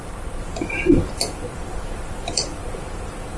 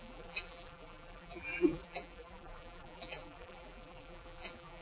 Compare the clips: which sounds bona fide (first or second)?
first